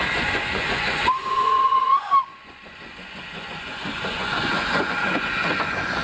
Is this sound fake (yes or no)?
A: yes